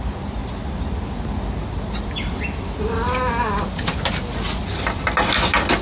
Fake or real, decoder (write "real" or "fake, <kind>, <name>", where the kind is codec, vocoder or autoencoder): real